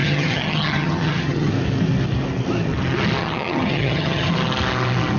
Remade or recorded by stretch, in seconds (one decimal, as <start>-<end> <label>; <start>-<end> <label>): 0.0-1.5 remade; 1.5-3.2 recorded; 3.2-4.3 remade; 4.3-5.2 recorded